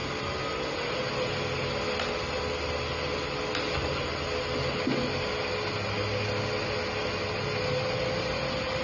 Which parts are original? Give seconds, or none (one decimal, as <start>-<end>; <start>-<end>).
0.0-8.8